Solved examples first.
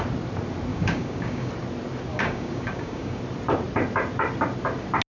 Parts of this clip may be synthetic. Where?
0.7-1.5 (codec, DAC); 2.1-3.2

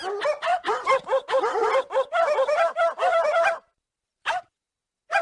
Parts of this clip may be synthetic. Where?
0.5-1.6 (vocoder, BigVGAN v2); 3.1-4.4

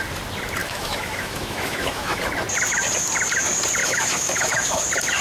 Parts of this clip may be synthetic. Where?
0.6-2.2 (autoencoder, DAC-VAE); 3.8-4.8

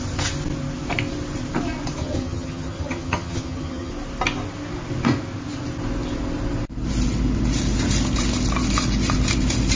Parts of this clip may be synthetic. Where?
2.0-3.9 (vocoder, HiFi-GAN)

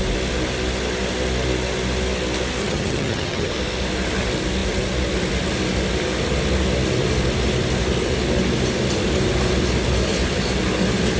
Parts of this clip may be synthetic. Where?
2.6-3.5 (vocoder, HiFi-GAN)

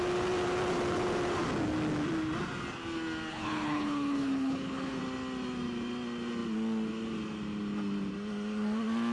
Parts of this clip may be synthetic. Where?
3.3-5.0 (codec, HILCodec)

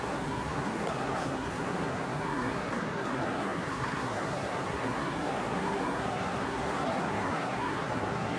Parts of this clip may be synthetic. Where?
0.0-8.4 (codec, SNAC)